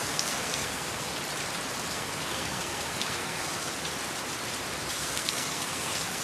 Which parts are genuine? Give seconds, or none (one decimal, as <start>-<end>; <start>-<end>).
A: 1.1-1.9; 3.7-4.9